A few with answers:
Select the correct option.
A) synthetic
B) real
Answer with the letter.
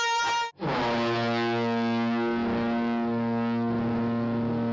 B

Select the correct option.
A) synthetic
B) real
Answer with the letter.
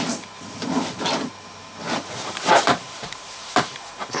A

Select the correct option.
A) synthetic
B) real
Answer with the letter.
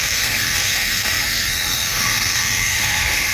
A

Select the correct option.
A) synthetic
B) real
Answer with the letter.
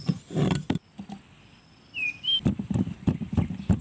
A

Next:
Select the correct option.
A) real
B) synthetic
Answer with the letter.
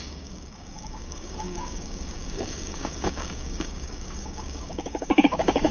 B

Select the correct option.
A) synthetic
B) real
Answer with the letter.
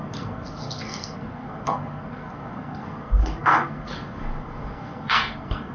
A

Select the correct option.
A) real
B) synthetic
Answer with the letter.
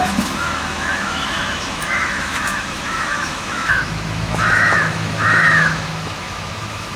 B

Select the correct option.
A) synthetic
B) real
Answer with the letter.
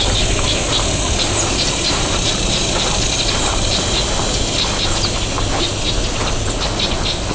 B